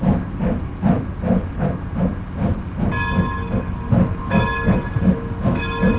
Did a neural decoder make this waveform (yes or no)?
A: no